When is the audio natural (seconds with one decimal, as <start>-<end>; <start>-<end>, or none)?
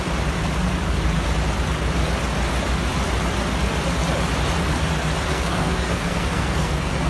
0.0-5.3